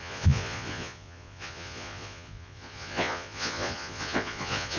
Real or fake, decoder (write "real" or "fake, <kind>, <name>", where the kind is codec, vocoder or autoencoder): fake, vocoder, Vocos